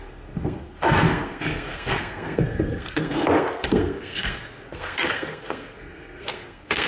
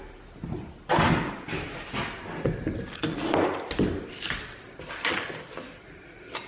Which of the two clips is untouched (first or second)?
second